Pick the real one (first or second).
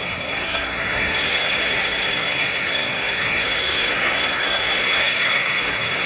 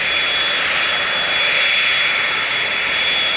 second